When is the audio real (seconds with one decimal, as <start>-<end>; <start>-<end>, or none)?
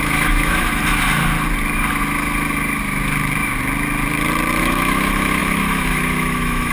0.8-4.6